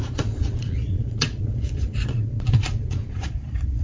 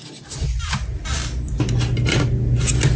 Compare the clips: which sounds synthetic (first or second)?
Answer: first